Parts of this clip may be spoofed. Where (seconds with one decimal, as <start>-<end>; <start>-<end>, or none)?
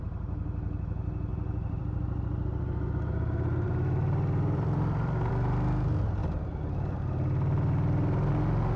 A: 1.3-5.3